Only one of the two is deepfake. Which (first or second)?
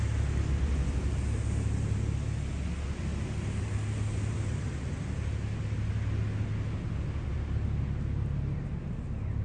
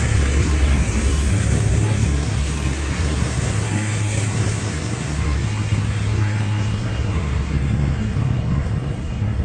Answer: second